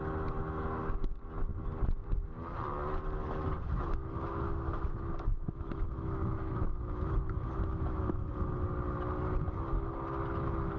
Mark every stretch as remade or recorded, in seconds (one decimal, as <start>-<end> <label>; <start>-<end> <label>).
0.0-3.6 recorded; 3.6-8.3 remade; 8.3-10.8 recorded